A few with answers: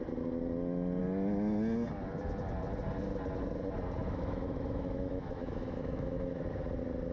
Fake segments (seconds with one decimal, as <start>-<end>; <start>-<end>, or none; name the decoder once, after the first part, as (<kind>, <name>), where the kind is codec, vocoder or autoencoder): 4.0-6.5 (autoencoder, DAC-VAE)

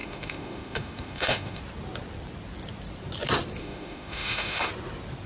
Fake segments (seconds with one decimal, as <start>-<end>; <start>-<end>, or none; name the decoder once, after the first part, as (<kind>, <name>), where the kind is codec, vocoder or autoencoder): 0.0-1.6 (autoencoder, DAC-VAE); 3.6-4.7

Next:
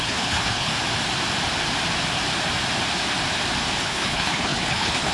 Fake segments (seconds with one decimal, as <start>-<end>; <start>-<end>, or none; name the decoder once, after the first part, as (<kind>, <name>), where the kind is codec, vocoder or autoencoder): 0.0-0.7 (codec, HILCodec); 3.8-5.1

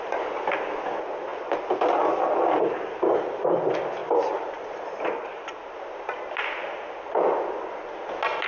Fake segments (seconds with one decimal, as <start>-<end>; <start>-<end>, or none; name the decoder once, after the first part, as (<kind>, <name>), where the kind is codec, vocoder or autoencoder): none

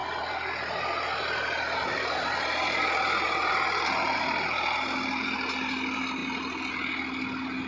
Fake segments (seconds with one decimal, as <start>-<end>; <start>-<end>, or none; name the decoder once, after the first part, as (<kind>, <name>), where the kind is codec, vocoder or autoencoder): none